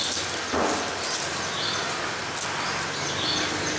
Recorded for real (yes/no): yes